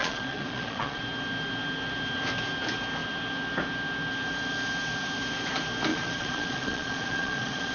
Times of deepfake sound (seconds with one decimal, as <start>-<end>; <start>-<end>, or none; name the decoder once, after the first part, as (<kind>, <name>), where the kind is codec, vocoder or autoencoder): 0.0-1.0 (vocoder, Vocos); 5.9-7.7